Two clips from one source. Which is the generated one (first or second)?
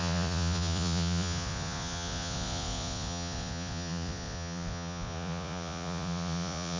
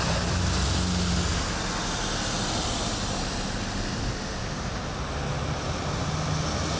first